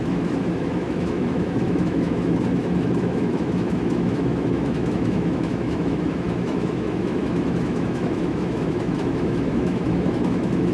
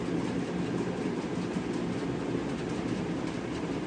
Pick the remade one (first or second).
first